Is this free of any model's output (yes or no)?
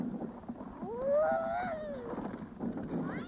yes